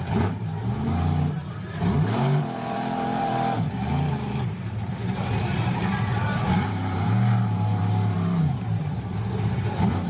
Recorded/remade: remade